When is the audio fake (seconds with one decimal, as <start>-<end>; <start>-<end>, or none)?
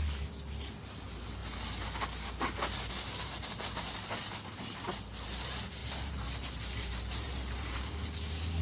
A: 5.8-7.9